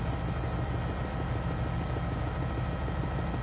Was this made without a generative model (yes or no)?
yes